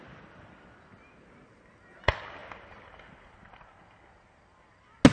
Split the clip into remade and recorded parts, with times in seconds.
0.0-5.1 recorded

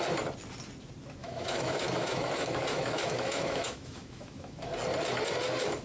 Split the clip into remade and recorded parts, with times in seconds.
0.0-1.2 recorded; 1.2-4.7 remade; 4.7-5.8 recorded

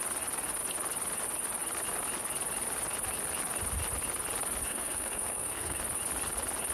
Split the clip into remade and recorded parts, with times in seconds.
0.0-4.7 recorded; 4.7-5.8 remade; 5.8-6.7 recorded